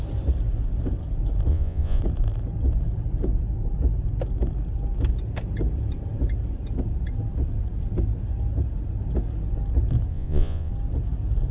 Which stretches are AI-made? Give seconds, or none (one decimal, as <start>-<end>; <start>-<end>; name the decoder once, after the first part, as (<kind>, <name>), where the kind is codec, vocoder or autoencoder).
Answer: 1.5-2.0 (vocoder, Vocos); 10.1-10.7